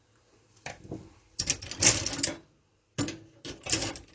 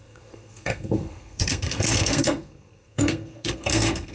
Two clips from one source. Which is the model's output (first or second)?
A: second